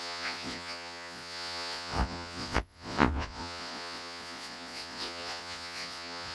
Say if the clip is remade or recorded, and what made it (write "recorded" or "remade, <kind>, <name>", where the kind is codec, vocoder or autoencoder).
remade, vocoder, Vocos